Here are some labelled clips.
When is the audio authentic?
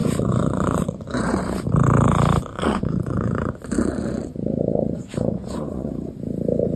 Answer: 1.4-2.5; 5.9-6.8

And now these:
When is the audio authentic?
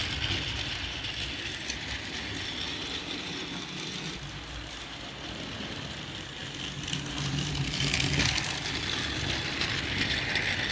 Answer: 0.0-10.7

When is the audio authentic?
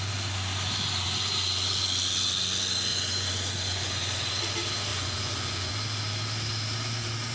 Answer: 0.0-2.9; 4.4-4.9; 5.7-7.3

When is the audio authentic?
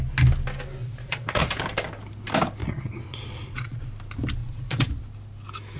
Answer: 0.0-0.8; 1.4-2.6; 3.8-4.4; 4.9-5.8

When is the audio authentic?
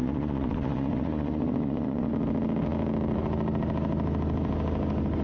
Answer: 2.1-5.2